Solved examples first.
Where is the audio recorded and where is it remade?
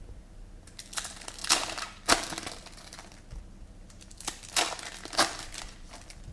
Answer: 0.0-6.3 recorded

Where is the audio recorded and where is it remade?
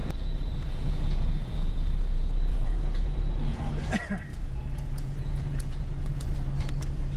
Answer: 0.0-2.0 remade; 2.0-2.5 recorded; 2.5-3.7 remade; 3.7-4.3 recorded; 4.3-6.2 remade; 6.2-7.2 recorded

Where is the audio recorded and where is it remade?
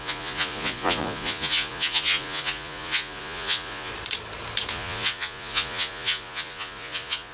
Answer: 0.0-3.9 remade; 3.9-4.7 recorded; 4.7-7.3 remade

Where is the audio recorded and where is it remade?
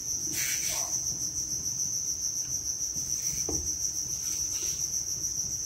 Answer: 0.0-0.6 remade; 0.6-5.7 recorded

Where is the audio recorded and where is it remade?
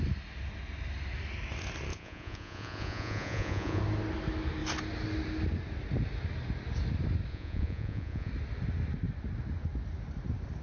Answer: 0.0-1.9 recorded; 1.9-3.8 remade; 3.8-7.3 recorded; 7.3-8.3 remade; 8.3-10.6 recorded